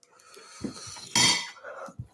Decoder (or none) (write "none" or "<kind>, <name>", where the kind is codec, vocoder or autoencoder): none